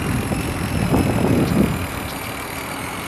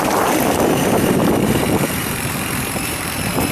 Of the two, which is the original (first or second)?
first